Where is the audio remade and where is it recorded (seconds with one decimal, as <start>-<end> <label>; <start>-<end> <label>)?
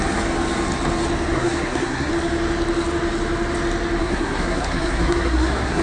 0.0-1.3 recorded; 1.3-2.1 remade; 2.1-4.0 recorded; 4.0-5.8 remade